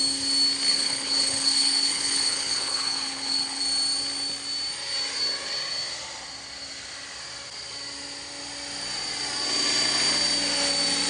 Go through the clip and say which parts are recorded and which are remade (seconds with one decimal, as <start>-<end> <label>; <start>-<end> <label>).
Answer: 0.0-0.7 recorded; 0.7-3.6 remade; 3.6-11.1 recorded